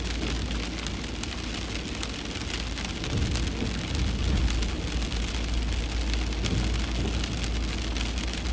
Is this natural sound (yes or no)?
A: yes